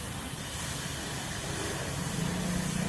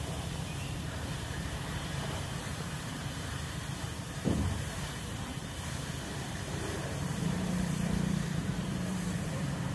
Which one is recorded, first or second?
first